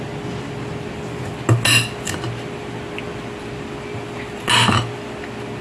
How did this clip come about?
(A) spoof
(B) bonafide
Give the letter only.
B